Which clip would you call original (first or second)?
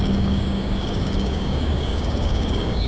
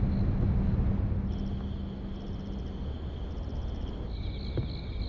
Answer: second